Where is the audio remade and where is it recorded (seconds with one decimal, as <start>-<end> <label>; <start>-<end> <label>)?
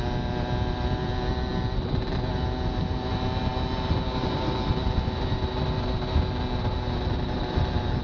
0.0-8.0 recorded